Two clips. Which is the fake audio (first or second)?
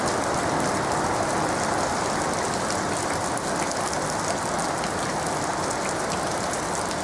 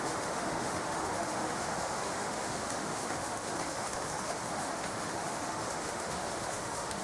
second